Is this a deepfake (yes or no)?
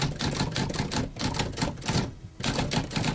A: no